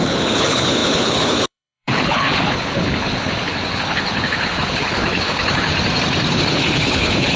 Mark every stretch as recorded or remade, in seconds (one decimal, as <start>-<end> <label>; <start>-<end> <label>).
0.0-5.7 remade; 5.7-6.3 recorded; 6.3-7.4 remade